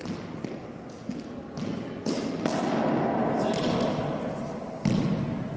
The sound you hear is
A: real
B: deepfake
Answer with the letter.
A